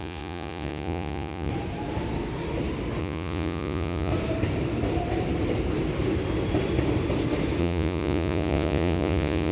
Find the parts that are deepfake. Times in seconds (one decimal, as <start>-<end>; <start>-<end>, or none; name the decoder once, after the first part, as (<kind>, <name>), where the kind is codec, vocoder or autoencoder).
0.0-1.5 (vocoder, Vocos); 3.0-4.1; 7.6-9.5